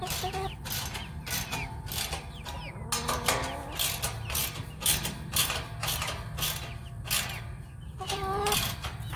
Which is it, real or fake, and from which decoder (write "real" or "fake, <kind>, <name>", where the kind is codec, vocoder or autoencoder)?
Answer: real